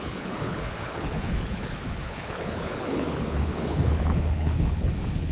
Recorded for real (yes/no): no